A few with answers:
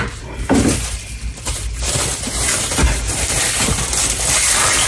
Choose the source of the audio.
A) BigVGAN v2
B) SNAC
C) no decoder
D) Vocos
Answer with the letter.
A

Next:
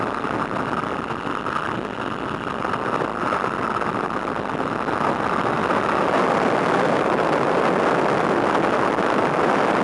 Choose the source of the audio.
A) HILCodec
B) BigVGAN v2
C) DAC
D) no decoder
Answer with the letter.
D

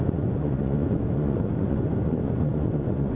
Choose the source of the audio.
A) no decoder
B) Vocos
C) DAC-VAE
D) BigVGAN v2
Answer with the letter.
B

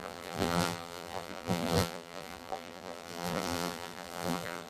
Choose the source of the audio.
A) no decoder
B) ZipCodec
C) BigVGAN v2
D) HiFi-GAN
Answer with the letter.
C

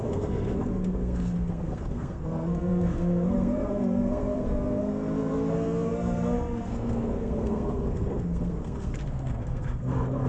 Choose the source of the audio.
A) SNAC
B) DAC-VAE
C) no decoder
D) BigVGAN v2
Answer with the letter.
A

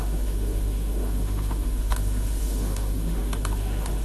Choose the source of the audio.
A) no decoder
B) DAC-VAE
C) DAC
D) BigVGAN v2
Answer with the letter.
B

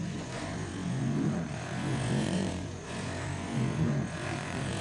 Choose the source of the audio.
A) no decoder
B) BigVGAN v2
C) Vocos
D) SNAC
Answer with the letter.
C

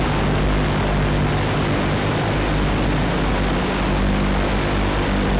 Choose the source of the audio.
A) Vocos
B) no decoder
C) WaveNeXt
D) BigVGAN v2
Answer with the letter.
B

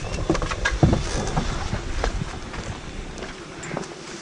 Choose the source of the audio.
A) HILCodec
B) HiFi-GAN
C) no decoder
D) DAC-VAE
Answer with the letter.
C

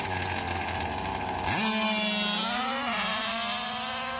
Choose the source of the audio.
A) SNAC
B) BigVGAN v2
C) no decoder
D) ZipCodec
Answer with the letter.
C